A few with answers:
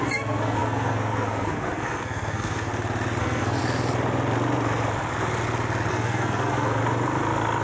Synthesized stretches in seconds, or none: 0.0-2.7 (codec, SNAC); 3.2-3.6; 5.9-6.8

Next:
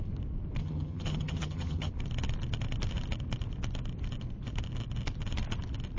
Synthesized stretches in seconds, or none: 0.6-1.9 (vocoder, HiFi-GAN)